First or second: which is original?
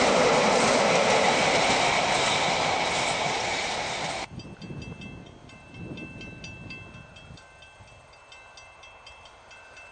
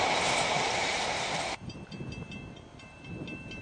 first